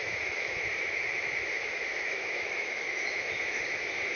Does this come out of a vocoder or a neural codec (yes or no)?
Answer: yes